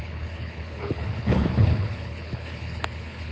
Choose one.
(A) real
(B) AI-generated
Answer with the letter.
B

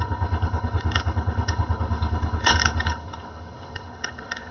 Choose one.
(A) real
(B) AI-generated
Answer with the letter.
B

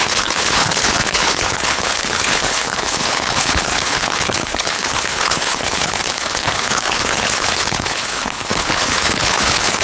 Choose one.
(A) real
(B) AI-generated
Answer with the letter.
B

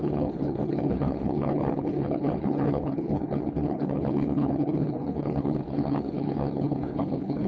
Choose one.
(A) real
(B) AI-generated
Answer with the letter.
B